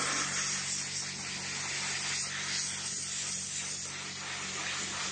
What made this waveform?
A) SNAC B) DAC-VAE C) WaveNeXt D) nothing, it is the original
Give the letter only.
D